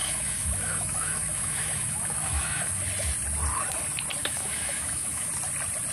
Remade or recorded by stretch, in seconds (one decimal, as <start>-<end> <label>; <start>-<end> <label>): 0.0-2.8 remade; 2.8-4.2 recorded; 4.2-5.3 remade; 5.3-5.9 recorded